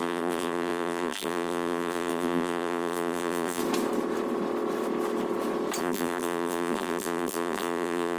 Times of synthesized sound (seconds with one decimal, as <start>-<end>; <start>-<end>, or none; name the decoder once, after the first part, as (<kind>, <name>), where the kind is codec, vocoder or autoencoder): 0.0-3.6 (vocoder, BigVGAN v2); 5.8-8.2